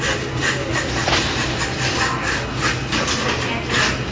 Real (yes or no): yes